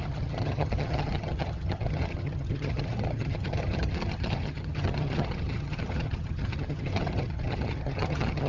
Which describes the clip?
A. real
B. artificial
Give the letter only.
B